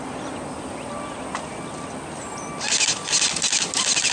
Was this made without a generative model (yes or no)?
yes